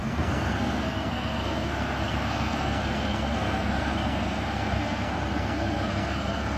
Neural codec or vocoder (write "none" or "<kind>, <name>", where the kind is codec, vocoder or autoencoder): codec, SNAC